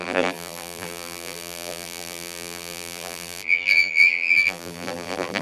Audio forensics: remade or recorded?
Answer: remade